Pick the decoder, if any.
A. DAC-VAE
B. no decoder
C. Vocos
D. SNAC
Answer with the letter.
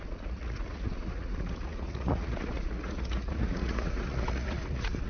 C